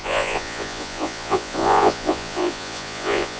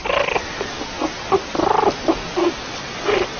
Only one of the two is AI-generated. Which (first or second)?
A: first